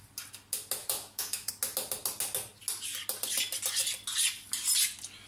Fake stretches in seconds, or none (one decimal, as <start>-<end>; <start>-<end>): 0.8-1.5